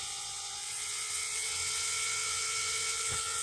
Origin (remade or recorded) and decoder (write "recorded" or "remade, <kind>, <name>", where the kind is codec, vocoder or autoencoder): remade, vocoder, WaveNeXt